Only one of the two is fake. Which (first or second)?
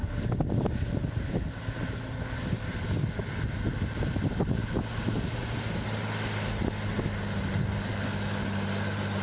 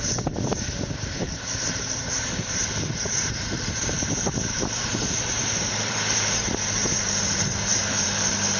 second